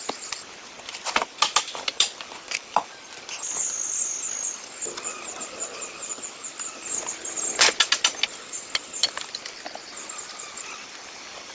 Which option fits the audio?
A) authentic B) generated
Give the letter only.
A